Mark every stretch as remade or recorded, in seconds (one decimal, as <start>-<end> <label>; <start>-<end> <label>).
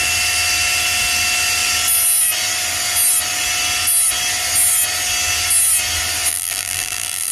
0.0-6.3 recorded; 6.3-7.3 remade